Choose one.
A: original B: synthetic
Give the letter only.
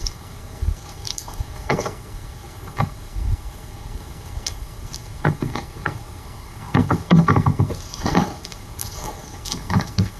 B